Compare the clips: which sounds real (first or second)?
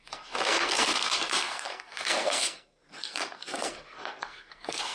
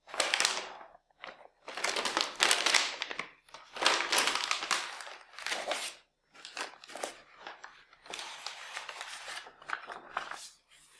second